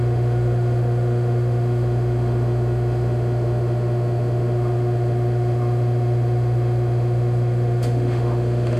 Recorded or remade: remade